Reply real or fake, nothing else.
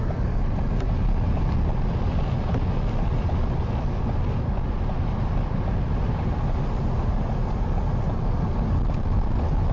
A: real